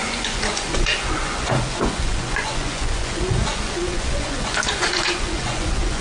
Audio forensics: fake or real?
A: fake